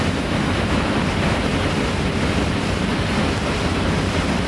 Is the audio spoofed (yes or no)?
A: no